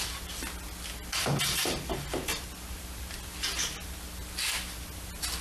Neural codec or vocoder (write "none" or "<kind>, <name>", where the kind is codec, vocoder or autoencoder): none